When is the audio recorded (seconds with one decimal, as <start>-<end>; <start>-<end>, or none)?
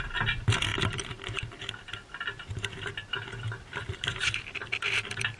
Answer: none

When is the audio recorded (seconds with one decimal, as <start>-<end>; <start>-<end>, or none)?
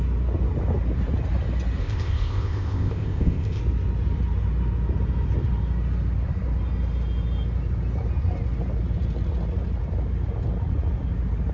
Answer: 0.0-1.8; 3.6-11.5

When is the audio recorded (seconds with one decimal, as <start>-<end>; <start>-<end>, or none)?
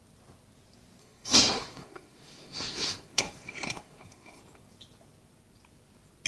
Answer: 0.0-1.0; 4.4-6.3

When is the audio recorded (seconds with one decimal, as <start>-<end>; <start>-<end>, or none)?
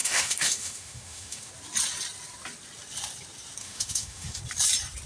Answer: 1.5-3.6; 4.4-5.1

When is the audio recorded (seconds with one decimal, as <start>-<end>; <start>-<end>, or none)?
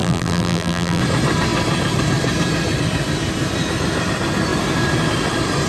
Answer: 1.0-5.7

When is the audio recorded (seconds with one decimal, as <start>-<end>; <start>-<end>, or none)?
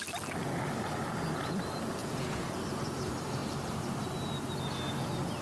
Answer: 0.0-2.0; 2.6-5.4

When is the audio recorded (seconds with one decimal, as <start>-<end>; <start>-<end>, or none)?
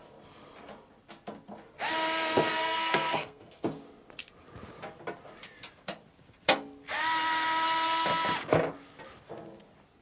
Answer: 0.0-2.5; 3.6-10.0